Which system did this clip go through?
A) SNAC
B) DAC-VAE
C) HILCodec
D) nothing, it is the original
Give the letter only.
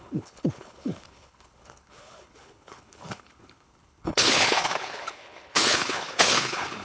C